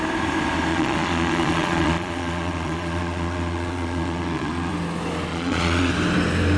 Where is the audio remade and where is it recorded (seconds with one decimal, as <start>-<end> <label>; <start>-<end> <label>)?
0.0-0.7 recorded; 0.7-4.7 remade; 4.7-5.3 recorded; 5.3-5.9 remade; 5.9-6.6 recorded